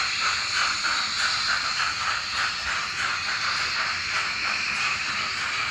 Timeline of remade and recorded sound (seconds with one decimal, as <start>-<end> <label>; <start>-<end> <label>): 0.0-5.7 recorded